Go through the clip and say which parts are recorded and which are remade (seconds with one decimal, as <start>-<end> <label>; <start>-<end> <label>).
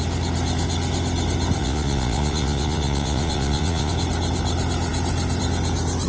0.0-1.6 recorded; 1.6-3.9 remade; 3.9-6.1 recorded